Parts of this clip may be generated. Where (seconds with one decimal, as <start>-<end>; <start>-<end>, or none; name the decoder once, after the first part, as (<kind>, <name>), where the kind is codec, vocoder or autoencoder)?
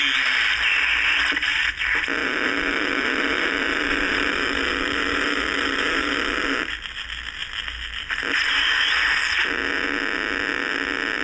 2.2-6.7 (vocoder, BigVGAN v2)